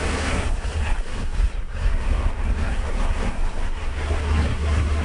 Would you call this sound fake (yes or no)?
yes